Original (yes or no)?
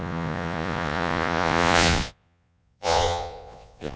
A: no